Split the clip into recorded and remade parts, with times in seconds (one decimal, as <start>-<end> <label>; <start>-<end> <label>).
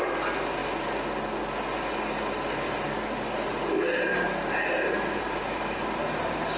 0.0-6.6 recorded